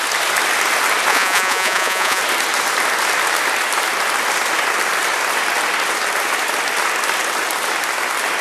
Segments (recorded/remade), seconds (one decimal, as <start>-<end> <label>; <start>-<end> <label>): 0.0-1.1 recorded; 1.1-2.2 remade; 2.2-8.4 recorded